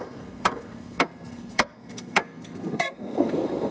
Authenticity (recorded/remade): remade